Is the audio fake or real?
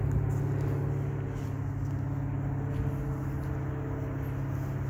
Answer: real